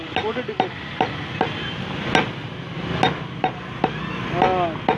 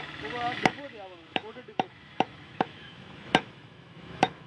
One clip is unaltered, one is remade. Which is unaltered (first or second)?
first